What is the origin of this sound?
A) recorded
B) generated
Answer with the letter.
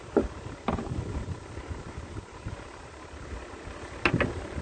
A